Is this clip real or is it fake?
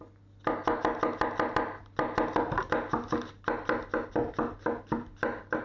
real